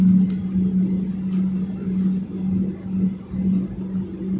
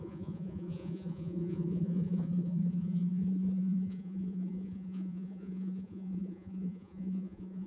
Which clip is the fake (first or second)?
second